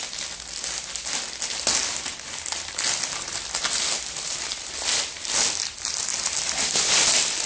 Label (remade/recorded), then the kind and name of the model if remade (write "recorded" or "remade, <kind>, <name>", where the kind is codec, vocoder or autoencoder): recorded